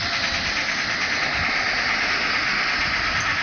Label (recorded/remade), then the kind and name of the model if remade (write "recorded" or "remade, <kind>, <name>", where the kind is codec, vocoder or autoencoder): recorded